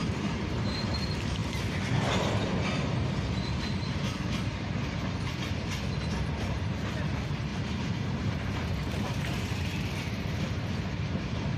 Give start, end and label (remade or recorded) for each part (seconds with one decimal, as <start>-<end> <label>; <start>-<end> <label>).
0.0-7.5 recorded; 7.5-10.9 remade; 10.9-11.6 recorded